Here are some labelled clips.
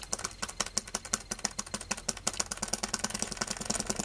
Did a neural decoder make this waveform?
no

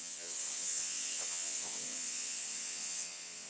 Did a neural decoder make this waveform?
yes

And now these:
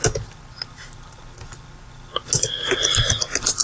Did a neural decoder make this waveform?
no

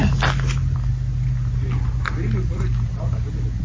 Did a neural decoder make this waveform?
no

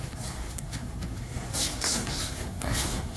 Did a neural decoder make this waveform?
yes